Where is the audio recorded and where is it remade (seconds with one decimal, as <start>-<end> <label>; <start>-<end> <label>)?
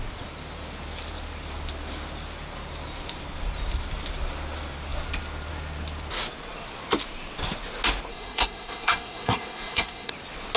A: 0.0-8.1 recorded; 8.1-10.1 remade; 10.1-10.6 recorded